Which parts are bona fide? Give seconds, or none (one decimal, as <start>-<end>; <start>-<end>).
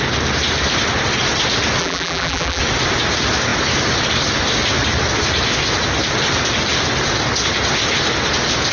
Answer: 0.0-1.8; 2.6-8.7